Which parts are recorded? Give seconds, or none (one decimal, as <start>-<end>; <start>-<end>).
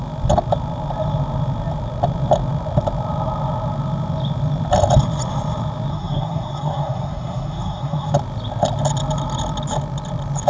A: 0.0-5.9; 8.1-10.5